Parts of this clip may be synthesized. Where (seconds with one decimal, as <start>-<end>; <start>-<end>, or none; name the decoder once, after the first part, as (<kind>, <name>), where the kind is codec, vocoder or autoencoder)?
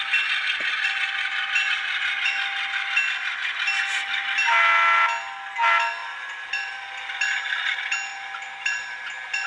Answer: 6.0-6.7 (vocoder, BigVGAN v2); 8.1-9.0